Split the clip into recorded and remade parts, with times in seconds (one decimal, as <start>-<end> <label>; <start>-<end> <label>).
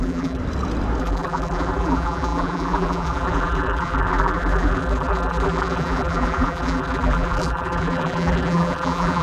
0.0-0.4 remade; 0.4-1.0 recorded; 1.0-9.2 remade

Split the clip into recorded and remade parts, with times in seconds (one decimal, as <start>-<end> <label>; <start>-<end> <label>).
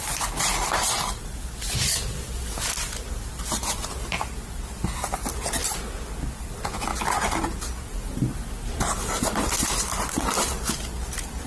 0.0-11.5 recorded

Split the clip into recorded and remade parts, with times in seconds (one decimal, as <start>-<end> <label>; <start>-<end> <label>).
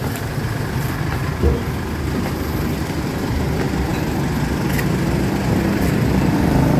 0.0-1.3 remade; 1.3-2.1 recorded; 2.1-6.8 remade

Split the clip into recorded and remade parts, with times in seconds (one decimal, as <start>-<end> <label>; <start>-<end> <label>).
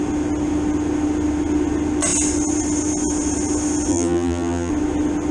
0.0-3.9 recorded; 3.9-4.7 remade; 4.7-5.3 recorded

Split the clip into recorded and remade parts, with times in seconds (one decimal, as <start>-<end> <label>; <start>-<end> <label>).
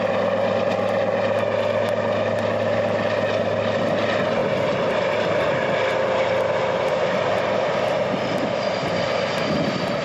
0.0-10.0 recorded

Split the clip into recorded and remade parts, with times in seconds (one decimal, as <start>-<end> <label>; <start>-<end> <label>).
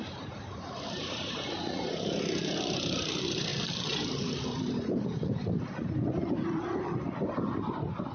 0.0-8.1 remade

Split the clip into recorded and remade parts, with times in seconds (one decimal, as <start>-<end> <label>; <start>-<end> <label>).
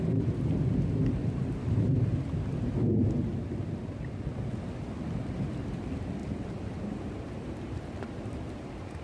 0.0-6.2 recorded; 6.2-8.5 remade; 8.5-9.0 recorded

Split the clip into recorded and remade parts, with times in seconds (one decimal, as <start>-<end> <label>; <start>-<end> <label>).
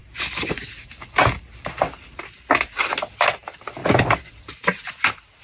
0.0-5.4 recorded